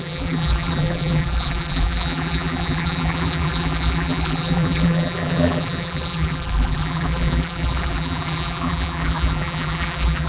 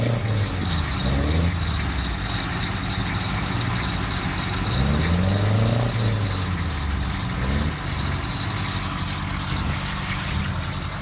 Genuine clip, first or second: second